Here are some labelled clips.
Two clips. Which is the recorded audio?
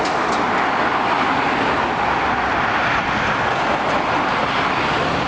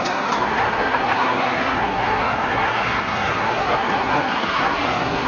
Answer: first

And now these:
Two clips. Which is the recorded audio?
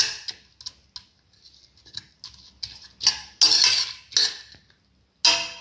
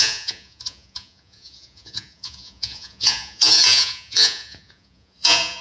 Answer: first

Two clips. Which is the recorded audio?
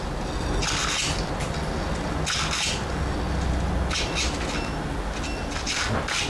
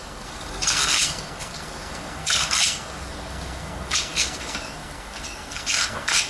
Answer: first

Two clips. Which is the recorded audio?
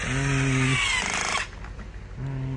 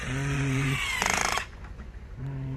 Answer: first